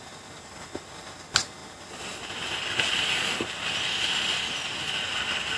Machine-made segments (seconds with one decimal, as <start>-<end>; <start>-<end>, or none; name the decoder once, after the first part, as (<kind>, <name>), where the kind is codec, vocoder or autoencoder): none

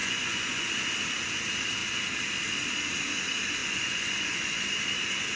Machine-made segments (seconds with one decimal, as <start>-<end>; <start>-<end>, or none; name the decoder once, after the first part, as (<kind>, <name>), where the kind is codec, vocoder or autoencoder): 0.0-0.7 (vocoder, Vocos); 3.6-4.6

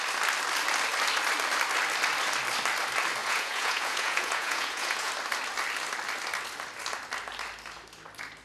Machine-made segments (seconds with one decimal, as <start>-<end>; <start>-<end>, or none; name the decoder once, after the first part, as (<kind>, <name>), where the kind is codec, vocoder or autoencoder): 3.2-5.1 (vocoder, Vocos)

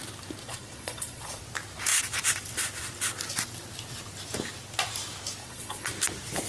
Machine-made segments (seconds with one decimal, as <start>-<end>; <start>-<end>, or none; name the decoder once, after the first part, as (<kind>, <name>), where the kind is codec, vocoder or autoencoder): 0.4-1.4 (vocoder, Vocos); 5.4-5.9

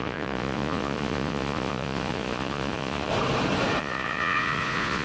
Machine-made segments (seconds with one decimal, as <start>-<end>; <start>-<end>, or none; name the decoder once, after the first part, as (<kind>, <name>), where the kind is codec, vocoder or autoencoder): 0.0-3.1 (vocoder, Vocos); 3.8-5.0

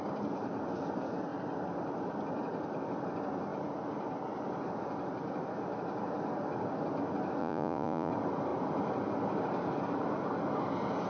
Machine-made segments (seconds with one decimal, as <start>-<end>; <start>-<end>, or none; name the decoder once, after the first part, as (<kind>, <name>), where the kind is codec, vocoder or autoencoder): 7.4-8.1 (vocoder, Vocos)

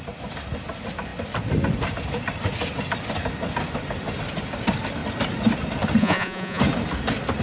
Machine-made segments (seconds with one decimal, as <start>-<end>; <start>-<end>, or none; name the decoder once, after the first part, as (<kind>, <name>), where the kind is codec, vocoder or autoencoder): 6.0-6.6 (vocoder, Vocos)